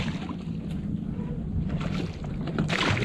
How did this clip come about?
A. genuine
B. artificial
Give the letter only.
B